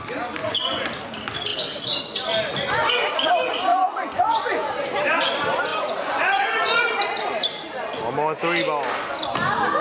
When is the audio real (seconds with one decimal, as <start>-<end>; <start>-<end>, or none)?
0.0-0.4; 0.9-3.7; 4.7-5.7; 7.0-9.8